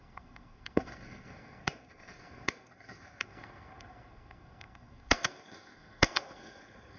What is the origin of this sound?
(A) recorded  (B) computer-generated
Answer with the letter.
B